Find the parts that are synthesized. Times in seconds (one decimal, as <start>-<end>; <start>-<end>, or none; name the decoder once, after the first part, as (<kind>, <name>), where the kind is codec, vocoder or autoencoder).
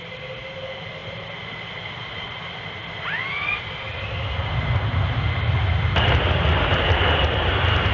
6.7-7.9 (vocoder, BigVGAN v2)